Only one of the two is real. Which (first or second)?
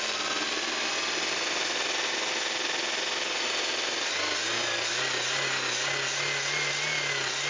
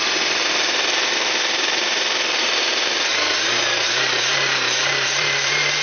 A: first